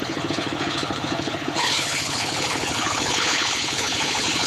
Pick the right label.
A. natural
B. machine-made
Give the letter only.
B